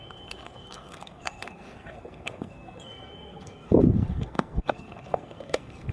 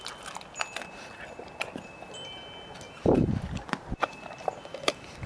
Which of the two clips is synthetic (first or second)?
first